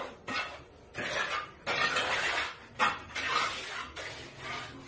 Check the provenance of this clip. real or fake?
real